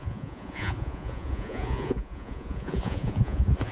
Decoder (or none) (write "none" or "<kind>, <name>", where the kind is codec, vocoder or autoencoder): vocoder, Vocos